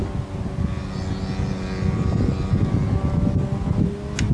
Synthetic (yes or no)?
no